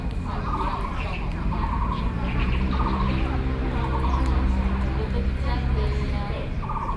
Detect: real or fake real